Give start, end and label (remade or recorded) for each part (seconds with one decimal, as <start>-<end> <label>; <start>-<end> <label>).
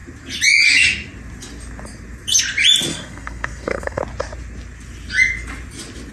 0.0-2.9 recorded; 2.9-4.0 remade; 4.0-6.1 recorded